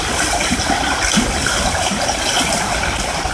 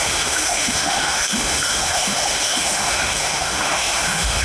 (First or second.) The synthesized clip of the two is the second